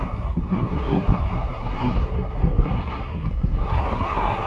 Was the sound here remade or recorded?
remade